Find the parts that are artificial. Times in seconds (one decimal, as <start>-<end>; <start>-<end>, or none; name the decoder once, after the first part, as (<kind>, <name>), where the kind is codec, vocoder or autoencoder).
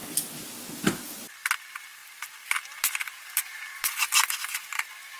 none